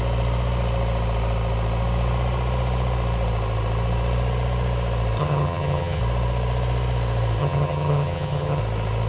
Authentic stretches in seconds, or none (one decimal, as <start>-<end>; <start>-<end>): 0.0-5.2; 6.0-7.4; 8.6-9.1